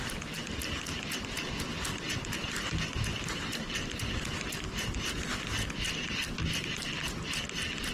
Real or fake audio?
real